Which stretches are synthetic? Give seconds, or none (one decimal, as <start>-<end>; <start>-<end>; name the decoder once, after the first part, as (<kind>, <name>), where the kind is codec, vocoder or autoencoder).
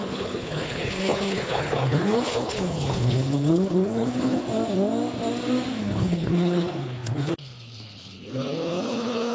0.0-4.4 (codec, HILCodec); 5.8-9.3